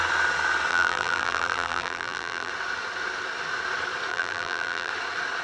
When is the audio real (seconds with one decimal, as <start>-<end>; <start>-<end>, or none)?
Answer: 0.0-0.7; 2.5-4.1; 4.9-5.4